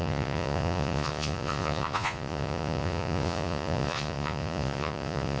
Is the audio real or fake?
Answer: fake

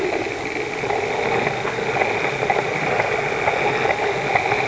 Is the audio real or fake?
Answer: real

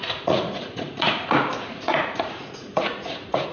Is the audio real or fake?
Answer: fake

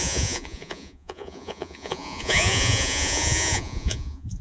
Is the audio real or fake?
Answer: fake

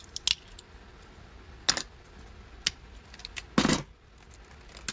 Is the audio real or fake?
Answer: real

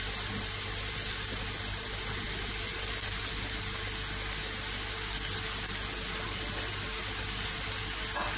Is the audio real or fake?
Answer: real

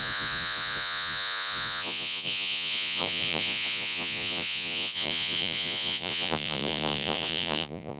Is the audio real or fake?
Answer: fake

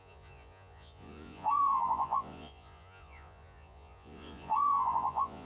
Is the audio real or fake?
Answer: fake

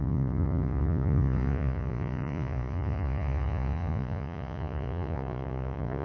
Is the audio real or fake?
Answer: fake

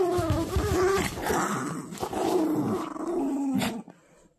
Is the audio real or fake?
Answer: real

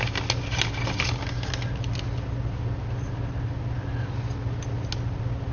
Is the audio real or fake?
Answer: real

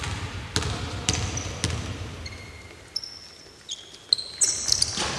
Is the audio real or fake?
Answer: real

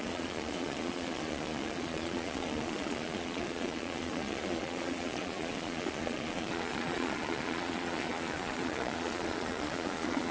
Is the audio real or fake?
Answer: fake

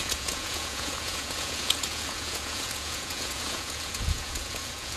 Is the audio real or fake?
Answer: fake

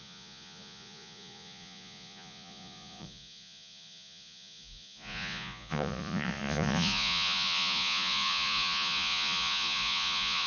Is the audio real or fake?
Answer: fake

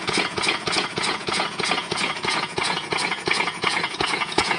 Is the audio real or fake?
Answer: fake